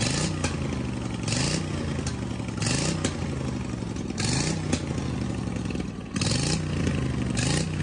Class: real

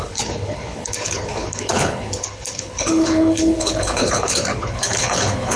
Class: fake